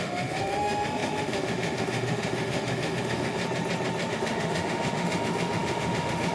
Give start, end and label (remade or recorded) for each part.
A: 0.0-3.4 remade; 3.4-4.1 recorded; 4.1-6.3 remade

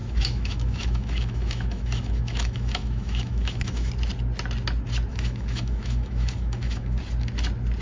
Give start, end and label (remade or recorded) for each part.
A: 0.0-3.9 remade; 3.9-5.1 recorded; 5.1-7.0 remade; 7.0-7.8 recorded

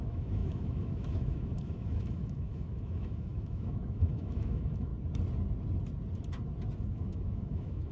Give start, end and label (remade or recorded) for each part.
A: 0.0-4.9 remade; 4.9-6.9 recorded; 6.9-7.9 remade

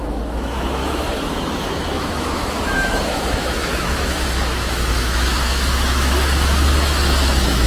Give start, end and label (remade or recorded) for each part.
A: 0.0-7.7 remade